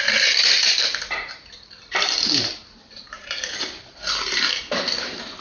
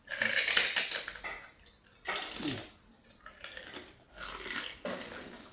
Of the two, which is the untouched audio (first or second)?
second